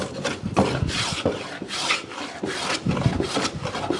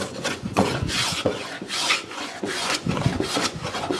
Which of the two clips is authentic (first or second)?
first